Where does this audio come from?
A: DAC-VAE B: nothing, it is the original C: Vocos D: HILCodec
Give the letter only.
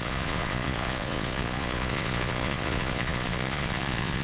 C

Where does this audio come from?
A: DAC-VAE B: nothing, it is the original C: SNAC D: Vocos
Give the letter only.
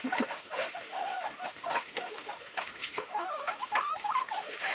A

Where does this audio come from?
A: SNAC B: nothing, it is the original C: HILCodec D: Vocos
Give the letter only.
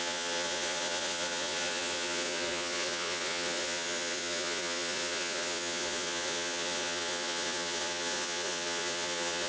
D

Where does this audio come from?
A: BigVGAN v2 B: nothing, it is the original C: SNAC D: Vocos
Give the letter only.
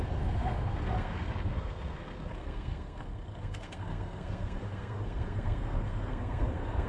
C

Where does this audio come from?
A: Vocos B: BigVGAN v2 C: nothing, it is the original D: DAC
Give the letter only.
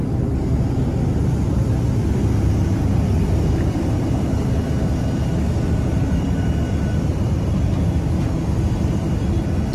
C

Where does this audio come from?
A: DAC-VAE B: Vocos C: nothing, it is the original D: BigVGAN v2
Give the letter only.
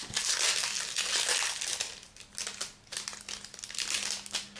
C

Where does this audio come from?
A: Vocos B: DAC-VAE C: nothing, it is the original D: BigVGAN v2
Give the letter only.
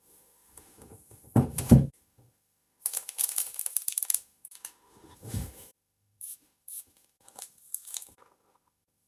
B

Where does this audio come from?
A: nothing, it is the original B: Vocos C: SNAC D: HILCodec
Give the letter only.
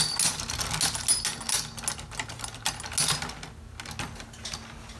A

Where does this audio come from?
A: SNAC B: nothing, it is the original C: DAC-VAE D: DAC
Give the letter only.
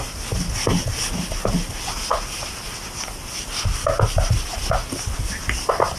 B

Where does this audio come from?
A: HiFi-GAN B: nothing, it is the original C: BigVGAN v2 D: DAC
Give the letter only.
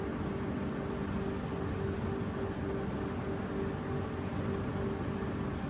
B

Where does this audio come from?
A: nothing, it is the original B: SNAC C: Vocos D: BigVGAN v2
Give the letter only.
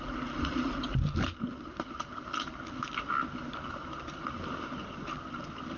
A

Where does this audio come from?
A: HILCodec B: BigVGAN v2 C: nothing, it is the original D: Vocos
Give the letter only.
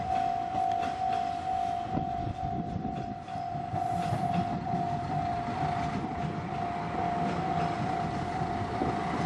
C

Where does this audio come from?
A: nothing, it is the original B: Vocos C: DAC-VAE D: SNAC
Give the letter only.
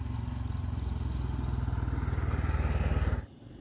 A